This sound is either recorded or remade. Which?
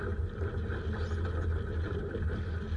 recorded